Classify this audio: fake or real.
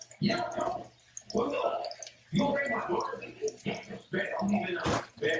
real